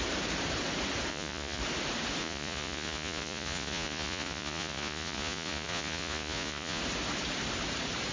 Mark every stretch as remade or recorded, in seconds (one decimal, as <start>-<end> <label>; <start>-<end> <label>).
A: 0.0-1.1 recorded; 1.1-1.6 remade; 1.6-2.2 recorded; 2.2-6.8 remade; 6.8-8.1 recorded